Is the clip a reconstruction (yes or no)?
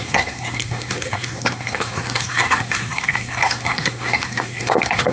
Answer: yes